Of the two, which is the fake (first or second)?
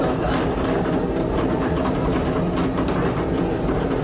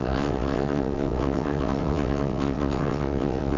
second